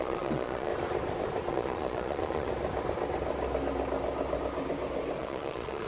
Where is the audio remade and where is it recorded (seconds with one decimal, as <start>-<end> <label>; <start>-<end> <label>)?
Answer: 0.0-0.7 remade; 0.7-1.5 recorded; 1.5-2.5 remade; 2.5-5.2 recorded; 5.2-5.9 remade